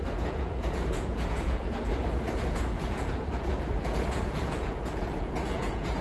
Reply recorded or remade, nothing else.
remade